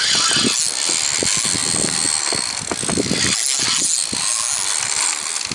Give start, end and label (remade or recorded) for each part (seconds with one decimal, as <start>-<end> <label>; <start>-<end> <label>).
0.0-5.5 recorded